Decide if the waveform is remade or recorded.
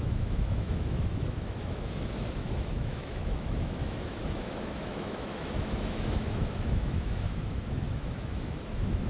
remade